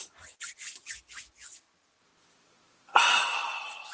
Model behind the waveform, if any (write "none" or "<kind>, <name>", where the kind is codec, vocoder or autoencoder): none